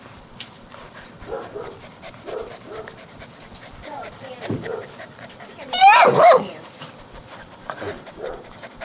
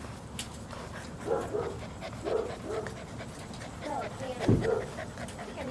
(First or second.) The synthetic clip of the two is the first